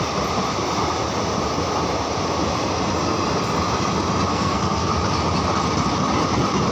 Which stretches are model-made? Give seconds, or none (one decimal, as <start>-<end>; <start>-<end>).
4.3-4.9